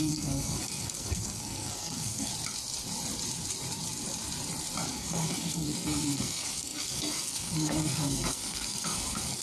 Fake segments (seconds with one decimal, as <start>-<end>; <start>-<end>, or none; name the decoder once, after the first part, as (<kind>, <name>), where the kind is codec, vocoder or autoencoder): 0.0-2.3 (codec, SNAC); 4.9-9.4